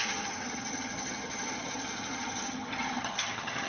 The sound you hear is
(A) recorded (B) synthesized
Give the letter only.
B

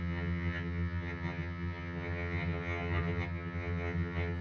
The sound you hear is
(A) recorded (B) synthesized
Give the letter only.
B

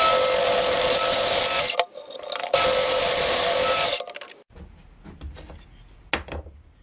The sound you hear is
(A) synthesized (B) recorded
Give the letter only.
B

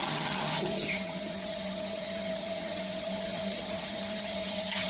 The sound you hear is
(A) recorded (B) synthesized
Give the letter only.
B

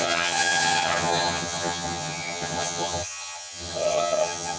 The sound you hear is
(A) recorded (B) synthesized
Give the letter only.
B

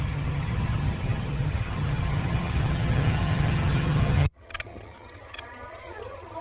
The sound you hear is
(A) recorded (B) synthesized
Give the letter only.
B